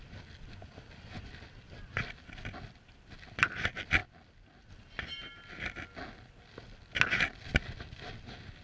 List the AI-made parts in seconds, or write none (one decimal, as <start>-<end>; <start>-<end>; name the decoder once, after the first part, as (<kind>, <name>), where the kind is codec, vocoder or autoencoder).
none